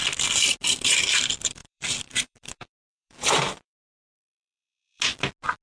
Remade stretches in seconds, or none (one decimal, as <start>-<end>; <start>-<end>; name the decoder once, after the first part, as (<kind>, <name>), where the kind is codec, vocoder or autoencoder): 1.6-5.0 (vocoder, BigVGAN v2)